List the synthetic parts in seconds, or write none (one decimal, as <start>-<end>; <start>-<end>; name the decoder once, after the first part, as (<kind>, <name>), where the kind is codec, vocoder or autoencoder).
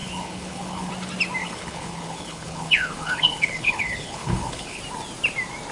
0.0-0.9 (codec, HILCodec); 1.4-4.8